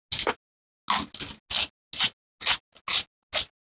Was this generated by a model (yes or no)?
no